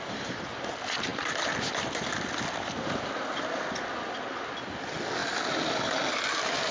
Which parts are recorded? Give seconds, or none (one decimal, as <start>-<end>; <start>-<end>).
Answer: 0.0-6.7